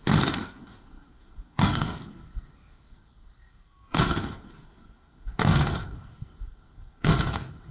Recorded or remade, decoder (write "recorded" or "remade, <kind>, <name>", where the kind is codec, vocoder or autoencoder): remade, codec, SNAC